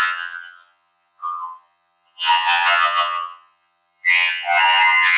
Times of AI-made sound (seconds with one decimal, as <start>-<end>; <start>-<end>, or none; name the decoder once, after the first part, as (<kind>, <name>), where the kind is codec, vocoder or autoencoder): 0.0-5.2 (vocoder, HiFi-GAN)